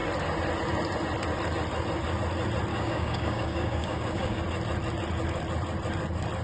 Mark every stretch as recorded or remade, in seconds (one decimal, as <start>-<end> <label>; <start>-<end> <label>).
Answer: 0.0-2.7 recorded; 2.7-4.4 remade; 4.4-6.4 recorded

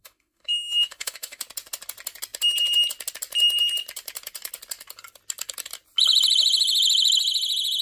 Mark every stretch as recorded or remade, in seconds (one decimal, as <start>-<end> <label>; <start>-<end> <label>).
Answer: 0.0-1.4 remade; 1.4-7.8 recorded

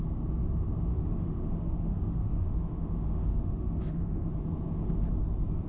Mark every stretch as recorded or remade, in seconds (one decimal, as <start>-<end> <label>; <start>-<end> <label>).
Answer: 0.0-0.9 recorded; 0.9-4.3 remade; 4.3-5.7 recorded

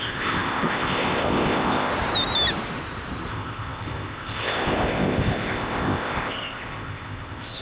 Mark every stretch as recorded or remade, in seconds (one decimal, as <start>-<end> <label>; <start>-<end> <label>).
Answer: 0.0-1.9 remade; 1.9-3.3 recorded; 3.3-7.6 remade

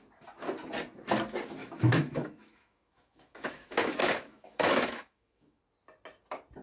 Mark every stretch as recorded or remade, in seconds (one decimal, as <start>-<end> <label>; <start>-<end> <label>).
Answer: 0.0-1.6 recorded; 1.6-5.6 remade; 5.6-6.6 recorded